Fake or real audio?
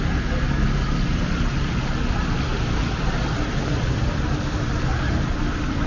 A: real